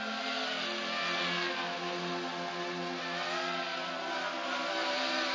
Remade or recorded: recorded